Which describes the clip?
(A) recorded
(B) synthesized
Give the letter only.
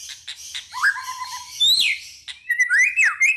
A